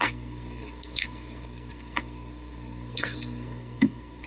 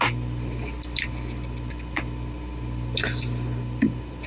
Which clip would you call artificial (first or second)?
first